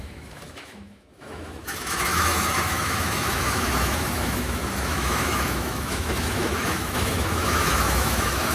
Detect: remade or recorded remade